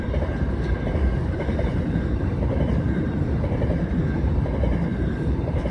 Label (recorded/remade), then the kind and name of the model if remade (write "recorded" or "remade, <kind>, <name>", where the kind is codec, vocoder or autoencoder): remade, vocoder, BigVGAN v2